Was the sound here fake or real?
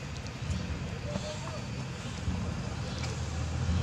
real